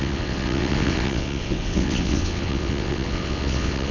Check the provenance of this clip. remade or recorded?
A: remade